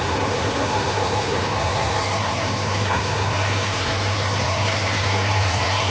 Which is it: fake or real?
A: fake